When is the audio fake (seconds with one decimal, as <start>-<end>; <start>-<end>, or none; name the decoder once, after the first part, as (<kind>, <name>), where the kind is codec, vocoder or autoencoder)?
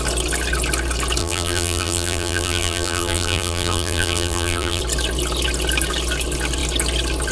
1.2-4.8 (vocoder, BigVGAN v2)